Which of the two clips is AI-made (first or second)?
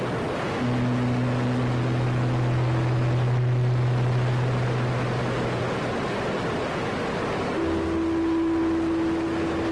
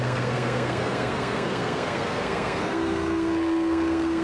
second